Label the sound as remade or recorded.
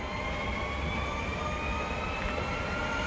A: recorded